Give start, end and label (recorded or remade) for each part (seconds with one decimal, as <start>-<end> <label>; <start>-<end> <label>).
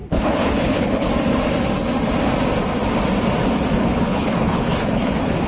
0.0-1.1 remade; 1.1-3.8 recorded; 3.8-5.5 remade